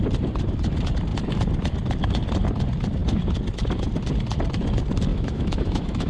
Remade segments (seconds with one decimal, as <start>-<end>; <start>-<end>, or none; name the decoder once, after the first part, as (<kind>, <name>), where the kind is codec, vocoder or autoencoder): 5.1-6.1 (autoencoder, DAC-VAE)